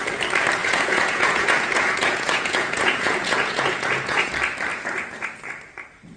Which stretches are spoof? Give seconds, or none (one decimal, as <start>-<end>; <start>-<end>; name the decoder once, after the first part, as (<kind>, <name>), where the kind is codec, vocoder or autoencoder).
0.6-4.3 (vocoder, Vocos); 4.7-5.4